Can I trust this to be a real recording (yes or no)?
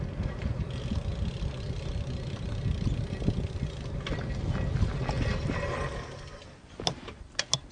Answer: yes